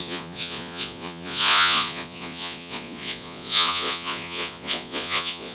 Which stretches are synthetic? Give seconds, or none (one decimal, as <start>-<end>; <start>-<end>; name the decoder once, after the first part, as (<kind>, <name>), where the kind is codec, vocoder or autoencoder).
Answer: 0.0-5.5 (vocoder, Vocos)